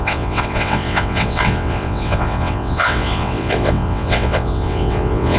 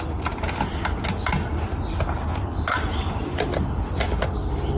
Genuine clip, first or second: second